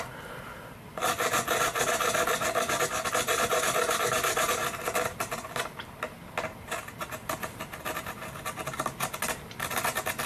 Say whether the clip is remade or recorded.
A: recorded